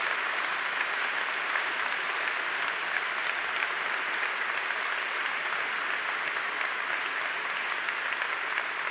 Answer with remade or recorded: recorded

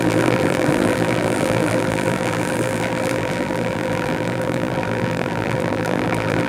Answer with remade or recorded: remade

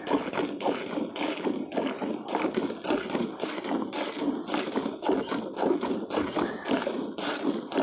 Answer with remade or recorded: recorded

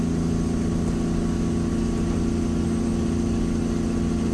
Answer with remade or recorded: recorded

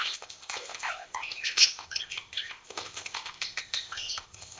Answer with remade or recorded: remade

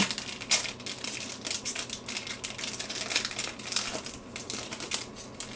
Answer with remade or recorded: recorded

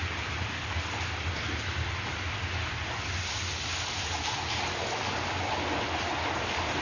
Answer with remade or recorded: recorded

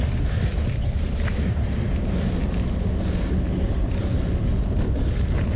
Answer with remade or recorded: recorded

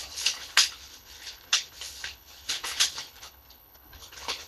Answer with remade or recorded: remade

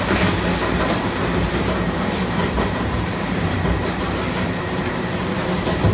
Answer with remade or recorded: remade